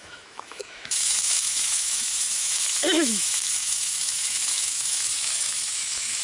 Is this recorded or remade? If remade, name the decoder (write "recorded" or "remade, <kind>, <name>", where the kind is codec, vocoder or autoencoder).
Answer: remade, autoencoder, DAC-VAE